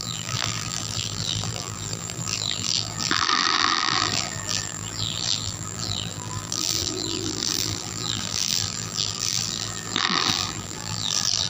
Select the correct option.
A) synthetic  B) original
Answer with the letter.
A